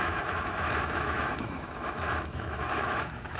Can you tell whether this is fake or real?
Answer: fake